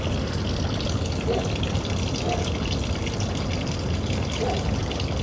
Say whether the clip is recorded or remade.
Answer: recorded